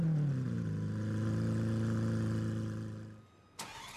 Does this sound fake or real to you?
real